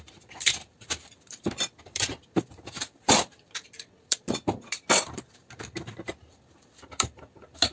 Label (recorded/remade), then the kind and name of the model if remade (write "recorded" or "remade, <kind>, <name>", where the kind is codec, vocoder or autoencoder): remade, vocoder, BigVGAN v2